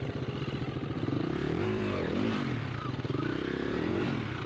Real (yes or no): no